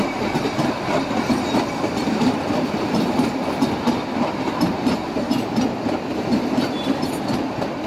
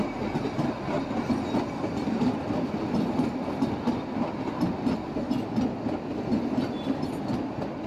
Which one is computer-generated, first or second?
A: first